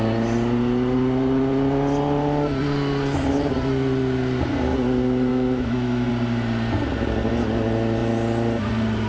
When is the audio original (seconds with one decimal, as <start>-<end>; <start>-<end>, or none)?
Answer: 0.0-5.3; 6.1-9.1

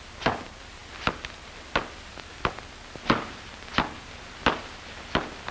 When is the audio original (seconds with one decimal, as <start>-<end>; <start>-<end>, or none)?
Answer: 0.0-5.5

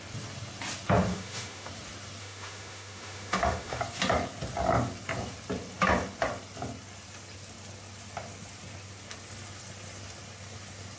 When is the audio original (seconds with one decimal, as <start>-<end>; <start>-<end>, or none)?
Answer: 0.0-1.1; 1.7-2.2; 3.8-11.0

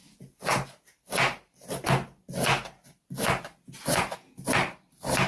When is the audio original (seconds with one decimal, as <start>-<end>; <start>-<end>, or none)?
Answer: 0.0-5.3